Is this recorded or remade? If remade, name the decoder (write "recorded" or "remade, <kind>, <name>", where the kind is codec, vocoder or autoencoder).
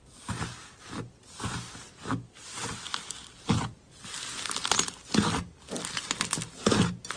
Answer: recorded